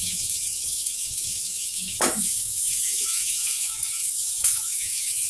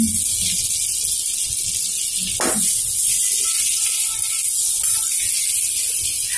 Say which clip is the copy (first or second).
first